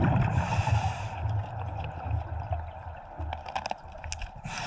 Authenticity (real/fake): real